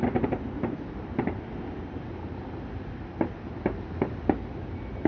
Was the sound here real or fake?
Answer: fake